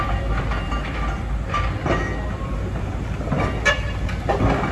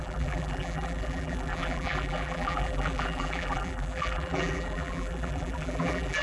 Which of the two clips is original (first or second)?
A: first